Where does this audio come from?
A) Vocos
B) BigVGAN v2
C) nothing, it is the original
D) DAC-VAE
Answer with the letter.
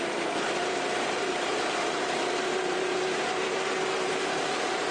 B